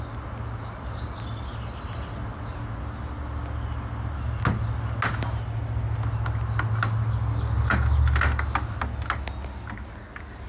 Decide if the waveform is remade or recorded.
recorded